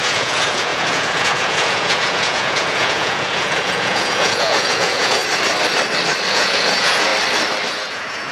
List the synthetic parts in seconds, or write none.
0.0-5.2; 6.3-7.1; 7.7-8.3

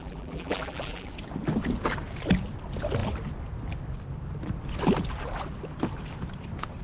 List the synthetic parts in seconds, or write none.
0.0-1.1

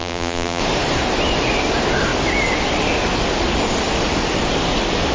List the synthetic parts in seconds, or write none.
0.0-0.6

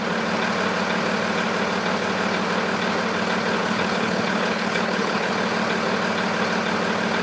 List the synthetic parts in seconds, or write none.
3.6-5.3